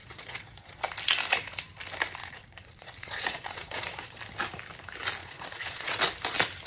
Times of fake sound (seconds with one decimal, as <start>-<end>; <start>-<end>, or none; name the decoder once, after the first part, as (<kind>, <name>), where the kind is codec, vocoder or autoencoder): 0.0-0.8 (vocoder, Vocos); 2.2-4.2; 5.2-6.0